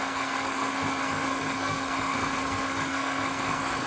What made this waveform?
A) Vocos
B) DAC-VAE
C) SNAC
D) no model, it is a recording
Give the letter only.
C